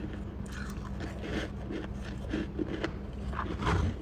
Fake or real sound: real